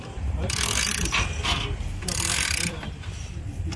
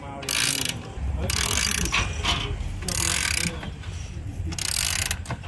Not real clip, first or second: first